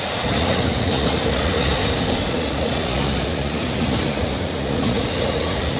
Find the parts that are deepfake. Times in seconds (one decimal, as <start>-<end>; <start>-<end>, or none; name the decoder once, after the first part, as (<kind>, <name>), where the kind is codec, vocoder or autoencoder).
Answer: 0.0-1.8 (vocoder, Vocos); 2.3-5.8